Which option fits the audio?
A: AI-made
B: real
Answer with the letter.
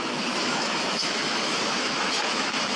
A